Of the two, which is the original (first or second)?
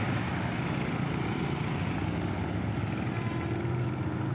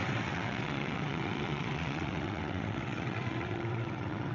first